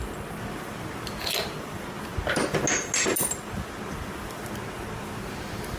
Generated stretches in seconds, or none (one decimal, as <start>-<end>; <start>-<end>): none